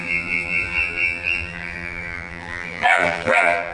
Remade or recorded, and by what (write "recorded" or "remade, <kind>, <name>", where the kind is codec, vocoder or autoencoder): remade, vocoder, BigVGAN v2